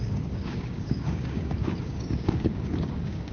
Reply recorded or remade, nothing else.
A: remade